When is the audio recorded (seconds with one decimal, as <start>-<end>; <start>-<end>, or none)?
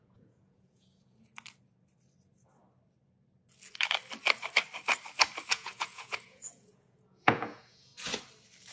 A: 1.3-5.5; 7.9-8.7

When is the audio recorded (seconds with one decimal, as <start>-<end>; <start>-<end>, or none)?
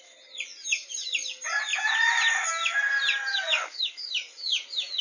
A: 0.0-3.3; 4.1-5.0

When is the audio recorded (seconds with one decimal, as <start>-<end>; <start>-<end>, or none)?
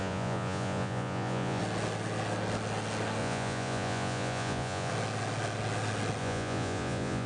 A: 1.6-3.2; 4.9-6.2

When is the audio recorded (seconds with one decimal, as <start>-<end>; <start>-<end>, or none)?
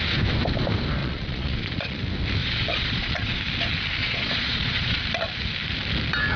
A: 0.0-1.0; 2.0-2.4; 3.4-4.0; 5.0-6.4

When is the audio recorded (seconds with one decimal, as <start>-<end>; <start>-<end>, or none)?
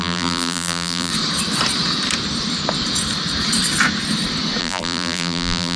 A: 1.1-4.6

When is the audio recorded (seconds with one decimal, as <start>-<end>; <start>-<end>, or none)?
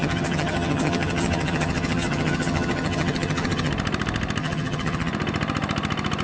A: 3.7-4.4; 5.1-6.2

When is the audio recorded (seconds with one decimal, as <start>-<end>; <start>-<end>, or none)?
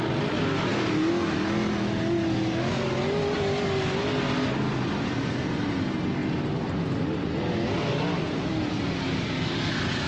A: 0.0-10.1